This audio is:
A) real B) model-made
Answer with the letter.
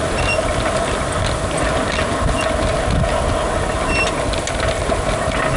A